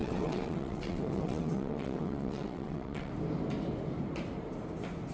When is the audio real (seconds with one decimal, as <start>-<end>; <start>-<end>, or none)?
3.1-5.1